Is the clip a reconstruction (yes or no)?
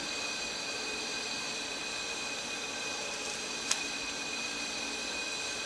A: no